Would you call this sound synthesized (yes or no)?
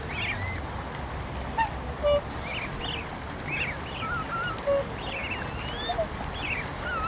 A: no